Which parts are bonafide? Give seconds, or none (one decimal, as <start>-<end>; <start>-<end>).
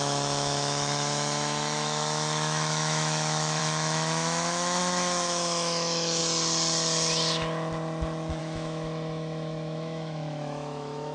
6.2-8.4